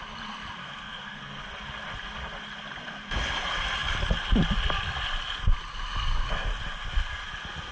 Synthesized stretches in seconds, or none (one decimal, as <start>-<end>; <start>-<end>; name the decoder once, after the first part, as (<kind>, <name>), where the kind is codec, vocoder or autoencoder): 0.6-1.4 (codec, SNAC)